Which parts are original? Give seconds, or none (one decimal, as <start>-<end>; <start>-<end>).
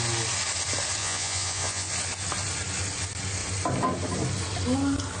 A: 0.0-1.0; 1.9-5.2